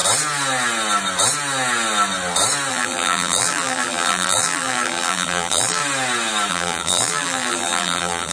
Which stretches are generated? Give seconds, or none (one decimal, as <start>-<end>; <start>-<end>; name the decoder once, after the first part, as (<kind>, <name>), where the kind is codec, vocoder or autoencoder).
2.7-5.8 (vocoder, BigVGAN v2); 6.5-8.3